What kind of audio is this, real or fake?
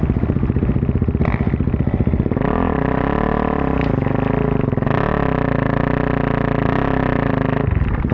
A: real